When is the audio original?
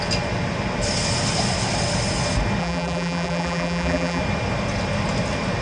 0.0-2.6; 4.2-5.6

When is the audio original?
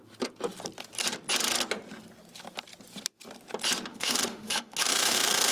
0.0-3.9